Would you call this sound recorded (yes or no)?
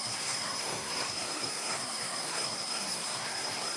no